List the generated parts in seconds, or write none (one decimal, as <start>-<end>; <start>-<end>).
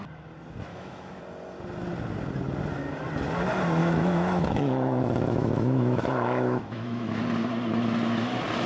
0.7-1.2; 3.8-7.2